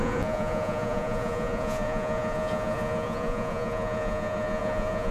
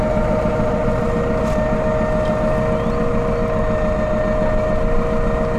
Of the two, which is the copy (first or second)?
first